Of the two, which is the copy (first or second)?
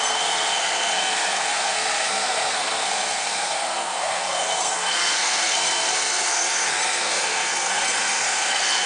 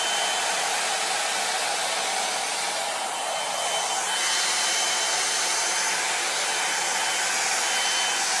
first